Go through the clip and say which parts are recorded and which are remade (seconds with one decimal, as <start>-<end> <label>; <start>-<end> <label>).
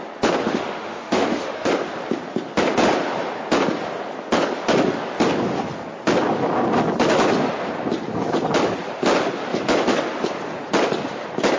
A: 0.0-0.4 recorded; 0.4-1.7 remade; 1.7-11.6 recorded